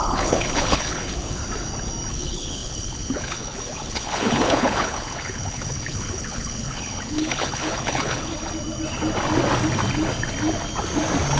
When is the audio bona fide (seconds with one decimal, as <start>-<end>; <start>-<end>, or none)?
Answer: 1.4-2.1; 8.3-11.4